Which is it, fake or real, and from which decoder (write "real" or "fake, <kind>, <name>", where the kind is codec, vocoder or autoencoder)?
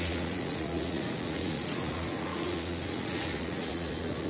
fake, vocoder, Vocos